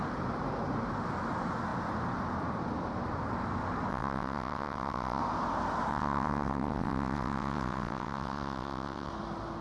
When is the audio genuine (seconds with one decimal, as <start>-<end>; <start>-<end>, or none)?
0.0-3.9; 5.2-5.9; 9.1-9.6